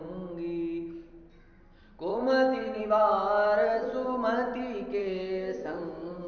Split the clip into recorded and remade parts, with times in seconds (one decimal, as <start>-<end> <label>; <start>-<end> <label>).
0.0-2.1 recorded; 2.1-2.8 remade; 2.8-5.0 recorded; 5.0-6.3 remade